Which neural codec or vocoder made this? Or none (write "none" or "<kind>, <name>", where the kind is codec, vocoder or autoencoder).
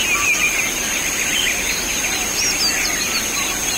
none